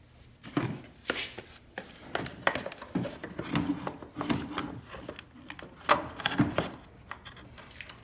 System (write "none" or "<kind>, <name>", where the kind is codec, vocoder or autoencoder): none